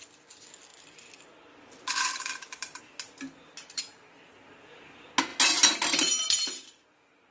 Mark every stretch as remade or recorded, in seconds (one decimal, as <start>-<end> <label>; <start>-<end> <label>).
0.0-0.7 recorded; 0.7-2.8 remade; 2.8-7.3 recorded